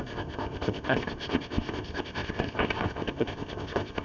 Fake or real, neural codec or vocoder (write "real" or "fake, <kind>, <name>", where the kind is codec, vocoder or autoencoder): fake, codec, ZipCodec